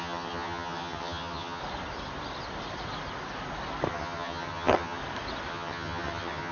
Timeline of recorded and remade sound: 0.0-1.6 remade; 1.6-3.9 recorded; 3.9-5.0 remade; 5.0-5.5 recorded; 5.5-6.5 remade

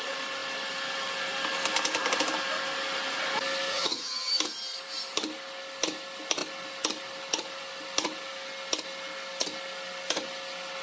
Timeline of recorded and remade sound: 0.0-3.7 recorded; 3.7-4.3 remade; 4.3-10.8 recorded

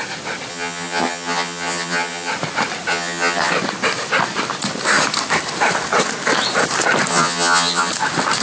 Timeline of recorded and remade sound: 0.0-0.5 recorded; 0.5-2.3 remade; 2.3-2.9 recorded; 2.9-3.5 remade; 3.5-7.1 recorded; 7.1-7.9 remade; 7.9-8.4 recorded

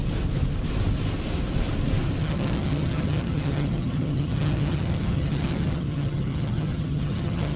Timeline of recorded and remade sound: 0.0-2.2 recorded; 2.2-7.6 remade

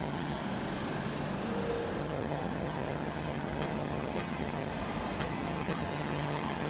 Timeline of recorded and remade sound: 0.0-0.4 remade; 0.4-2.0 recorded; 2.0-4.7 remade; 4.7-5.2 recorded; 5.2-6.7 remade

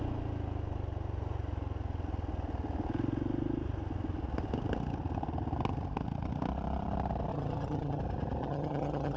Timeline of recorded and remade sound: 0.0-7.3 recorded; 7.3-8.0 remade; 8.0-8.4 recorded; 8.4-9.2 remade

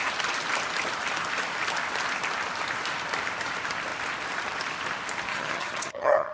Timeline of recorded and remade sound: 0.0-5.3 recorded; 5.3-6.3 remade